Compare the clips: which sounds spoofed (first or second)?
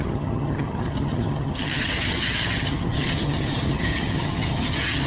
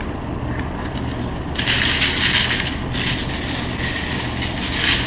first